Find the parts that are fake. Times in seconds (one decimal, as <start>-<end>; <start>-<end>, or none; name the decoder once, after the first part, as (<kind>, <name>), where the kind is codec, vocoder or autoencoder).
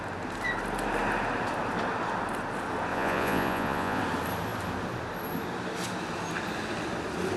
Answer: 2.9-4.0 (vocoder, Vocos)